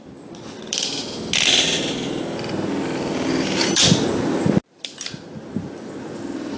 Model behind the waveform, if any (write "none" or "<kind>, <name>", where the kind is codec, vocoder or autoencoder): none